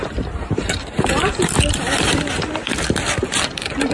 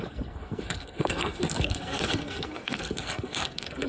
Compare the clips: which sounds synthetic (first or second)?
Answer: second